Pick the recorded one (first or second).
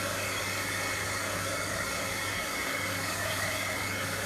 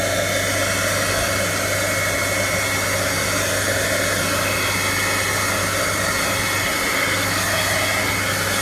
second